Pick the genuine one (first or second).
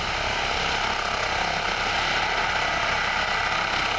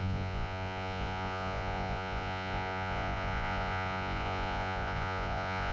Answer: first